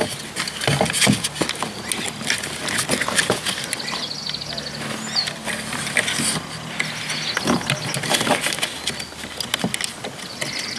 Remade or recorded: recorded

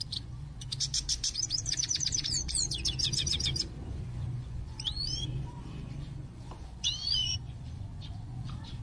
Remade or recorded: remade